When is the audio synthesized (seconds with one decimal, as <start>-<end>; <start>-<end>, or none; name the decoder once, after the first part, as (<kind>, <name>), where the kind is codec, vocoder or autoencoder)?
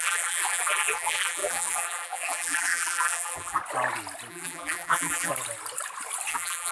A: 0.0-3.6 (vocoder, BigVGAN v2); 4.3-5.3; 6.3-6.7